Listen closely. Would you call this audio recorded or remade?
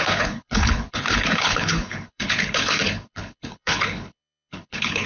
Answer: remade